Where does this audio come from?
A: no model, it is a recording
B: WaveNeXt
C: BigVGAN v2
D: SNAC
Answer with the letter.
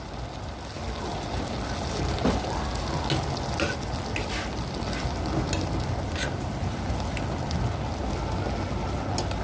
A